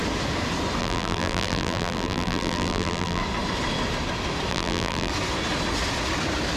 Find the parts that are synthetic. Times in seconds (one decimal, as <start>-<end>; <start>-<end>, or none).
0.8-3.2; 4.5-5.1